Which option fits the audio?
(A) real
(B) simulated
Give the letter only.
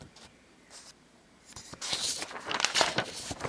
B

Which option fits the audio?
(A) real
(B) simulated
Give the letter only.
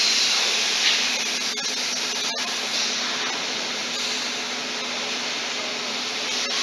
A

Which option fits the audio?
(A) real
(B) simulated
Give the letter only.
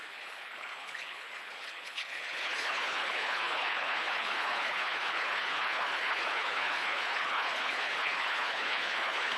B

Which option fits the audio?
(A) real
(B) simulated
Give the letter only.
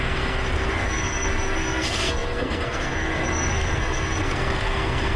B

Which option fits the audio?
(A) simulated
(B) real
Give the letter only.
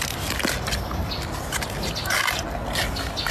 B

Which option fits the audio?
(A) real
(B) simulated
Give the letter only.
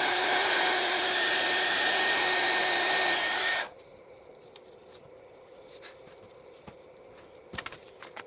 B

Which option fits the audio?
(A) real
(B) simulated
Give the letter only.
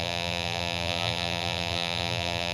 B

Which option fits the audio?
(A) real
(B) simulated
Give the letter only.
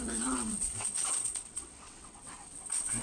B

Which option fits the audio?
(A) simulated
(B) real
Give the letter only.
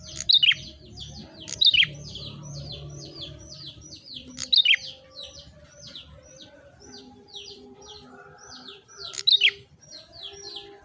B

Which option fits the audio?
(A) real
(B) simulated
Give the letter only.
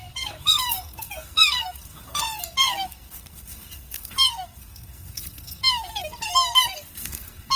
B